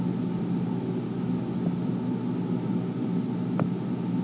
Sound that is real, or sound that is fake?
real